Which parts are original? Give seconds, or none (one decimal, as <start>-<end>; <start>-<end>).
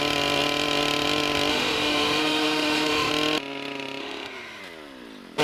0.0-1.5; 3.1-4.0; 4.6-5.4